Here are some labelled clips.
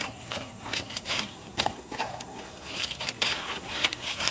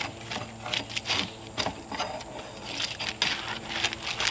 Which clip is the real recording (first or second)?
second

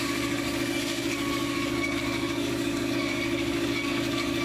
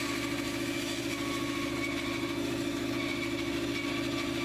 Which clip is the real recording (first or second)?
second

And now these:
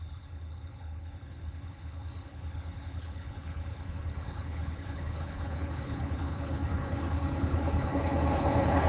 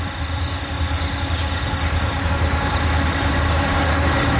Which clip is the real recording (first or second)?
second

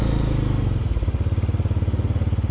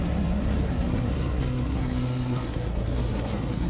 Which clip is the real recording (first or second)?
first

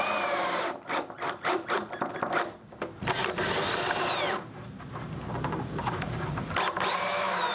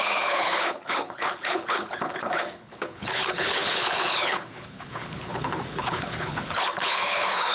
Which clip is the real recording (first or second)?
first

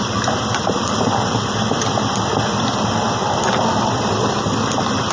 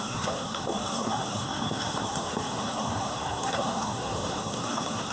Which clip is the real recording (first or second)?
first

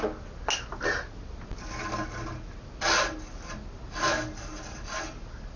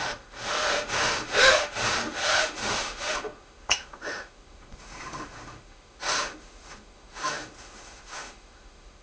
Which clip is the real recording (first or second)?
first